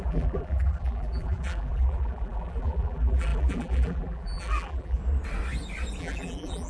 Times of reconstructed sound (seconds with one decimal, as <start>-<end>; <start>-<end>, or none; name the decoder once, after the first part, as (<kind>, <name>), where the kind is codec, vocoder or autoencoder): 0.0-5.0 (vocoder, BigVGAN v2); 6.0-6.7